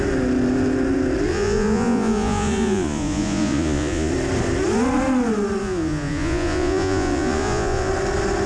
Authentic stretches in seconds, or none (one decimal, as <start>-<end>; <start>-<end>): 0.0-1.3; 4.1-5.6; 7.9-8.5